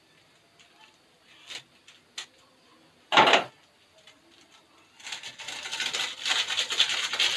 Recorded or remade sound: recorded